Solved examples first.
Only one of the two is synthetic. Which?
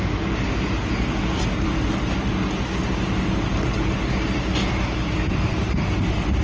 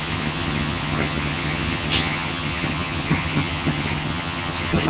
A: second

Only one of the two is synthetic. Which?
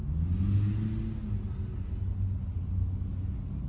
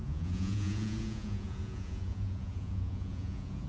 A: second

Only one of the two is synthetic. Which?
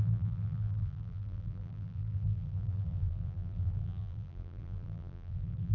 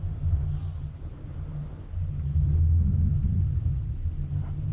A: first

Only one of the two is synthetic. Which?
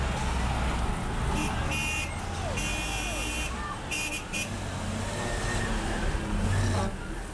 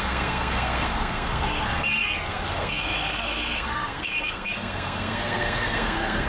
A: second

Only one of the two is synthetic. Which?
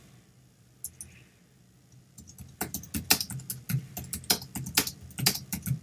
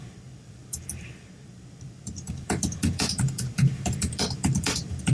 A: second